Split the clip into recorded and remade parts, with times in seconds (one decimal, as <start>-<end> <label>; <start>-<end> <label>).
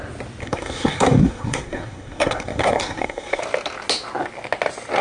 0.0-0.4 recorded; 0.4-3.4 remade; 3.4-5.0 recorded